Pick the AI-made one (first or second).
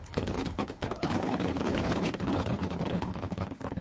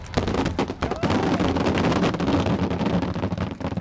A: first